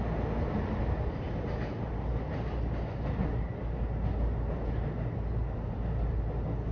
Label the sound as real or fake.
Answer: real